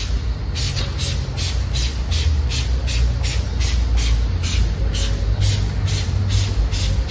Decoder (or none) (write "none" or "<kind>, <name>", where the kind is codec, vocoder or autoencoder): none